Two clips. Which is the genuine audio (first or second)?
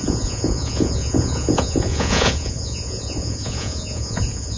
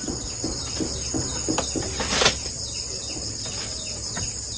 second